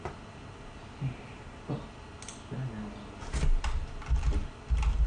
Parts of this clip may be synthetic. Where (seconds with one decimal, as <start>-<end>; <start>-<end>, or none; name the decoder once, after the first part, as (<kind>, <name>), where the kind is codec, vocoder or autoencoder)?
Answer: none